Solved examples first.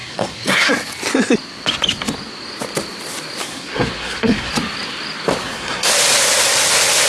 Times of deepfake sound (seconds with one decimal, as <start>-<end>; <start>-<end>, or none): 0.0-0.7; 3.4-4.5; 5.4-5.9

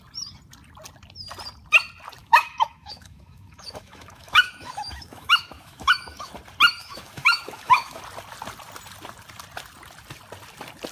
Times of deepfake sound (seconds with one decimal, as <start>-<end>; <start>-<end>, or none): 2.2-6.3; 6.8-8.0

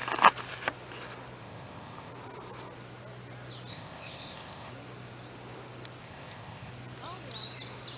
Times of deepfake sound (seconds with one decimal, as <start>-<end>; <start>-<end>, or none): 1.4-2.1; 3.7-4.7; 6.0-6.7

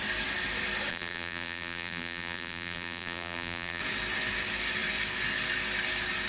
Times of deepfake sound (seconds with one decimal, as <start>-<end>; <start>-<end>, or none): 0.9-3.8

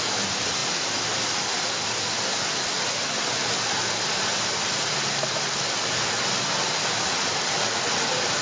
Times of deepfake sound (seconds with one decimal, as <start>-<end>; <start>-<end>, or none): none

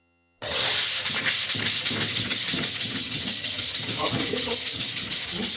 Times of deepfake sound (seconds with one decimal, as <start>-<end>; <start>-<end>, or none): 0.0-0.6; 2.1-5.6